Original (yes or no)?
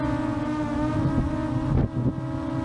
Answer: yes